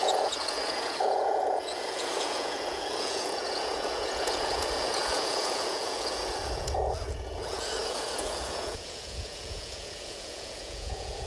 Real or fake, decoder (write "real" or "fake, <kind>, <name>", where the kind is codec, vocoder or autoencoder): fake, vocoder, Vocos